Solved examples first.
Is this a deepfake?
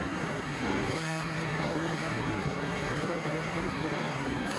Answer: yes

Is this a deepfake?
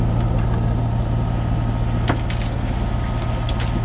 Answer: no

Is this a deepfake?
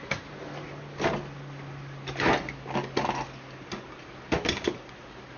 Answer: no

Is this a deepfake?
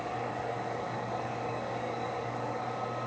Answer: yes